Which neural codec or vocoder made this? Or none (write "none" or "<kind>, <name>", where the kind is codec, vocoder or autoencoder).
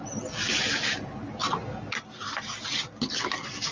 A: none